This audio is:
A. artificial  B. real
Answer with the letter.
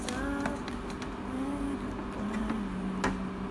B